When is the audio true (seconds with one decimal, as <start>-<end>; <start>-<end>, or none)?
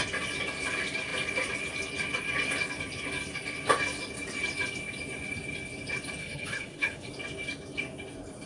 0.0-6.2; 7.1-8.5